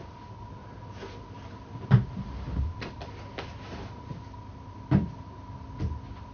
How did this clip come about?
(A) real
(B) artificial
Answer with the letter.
A